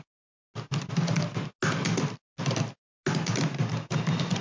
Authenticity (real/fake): real